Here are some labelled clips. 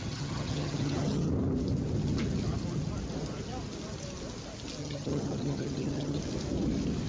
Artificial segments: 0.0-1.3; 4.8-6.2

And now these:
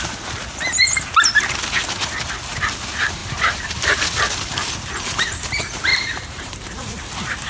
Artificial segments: 3.2-4.1; 5.9-7.0

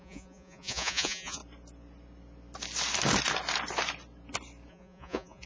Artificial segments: 0.0-1.4; 4.7-5.5

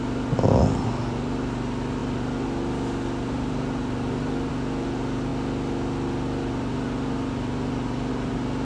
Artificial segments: none

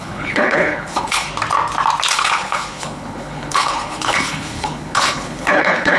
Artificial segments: 0.0-1.3; 2.1-6.0

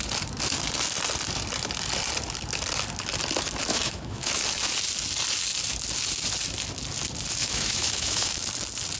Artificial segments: 3.7-4.4; 7.4-8.5